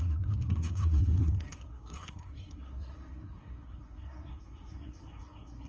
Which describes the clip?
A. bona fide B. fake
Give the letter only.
B